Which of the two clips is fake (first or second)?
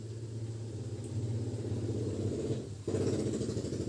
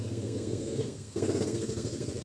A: second